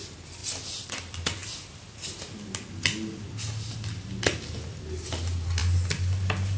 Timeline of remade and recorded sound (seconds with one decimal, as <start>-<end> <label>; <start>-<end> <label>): 0.0-6.6 recorded